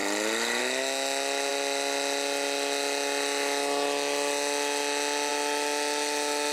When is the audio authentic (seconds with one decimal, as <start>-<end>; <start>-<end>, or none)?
0.0-6.5